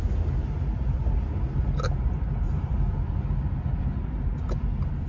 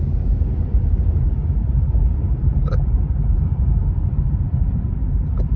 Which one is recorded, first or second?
first